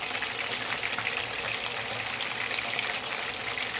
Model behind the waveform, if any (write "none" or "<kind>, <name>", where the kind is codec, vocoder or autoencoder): none